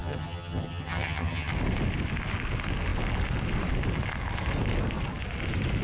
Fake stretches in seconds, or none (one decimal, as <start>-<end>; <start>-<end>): 0.0-1.5